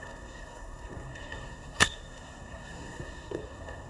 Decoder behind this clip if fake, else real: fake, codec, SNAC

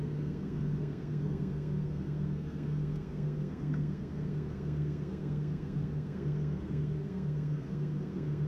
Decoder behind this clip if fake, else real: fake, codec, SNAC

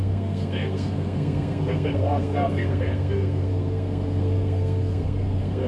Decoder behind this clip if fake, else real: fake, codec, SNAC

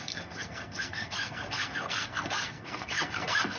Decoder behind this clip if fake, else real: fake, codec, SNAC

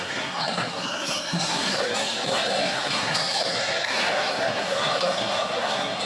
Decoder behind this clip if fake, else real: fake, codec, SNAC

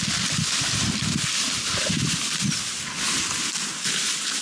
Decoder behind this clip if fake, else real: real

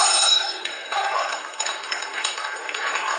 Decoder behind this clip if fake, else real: fake, codec, SNAC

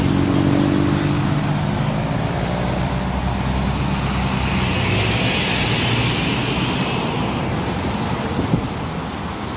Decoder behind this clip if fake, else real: real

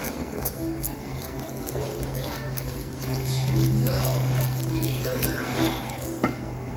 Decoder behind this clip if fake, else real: fake, codec, SNAC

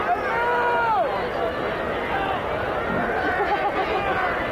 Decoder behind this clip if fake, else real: real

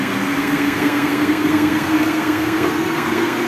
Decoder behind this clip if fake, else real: fake, codec, SNAC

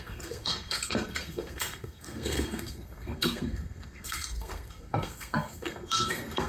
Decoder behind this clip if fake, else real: fake, codec, SNAC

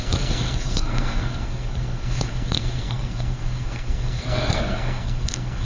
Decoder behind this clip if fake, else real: fake, codec, SNAC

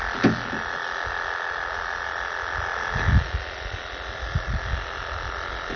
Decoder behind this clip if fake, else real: real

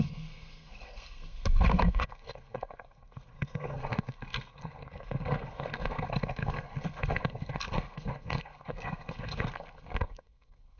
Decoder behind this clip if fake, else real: fake, codec, SNAC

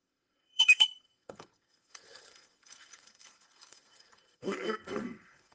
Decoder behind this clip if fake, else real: fake, codec, SNAC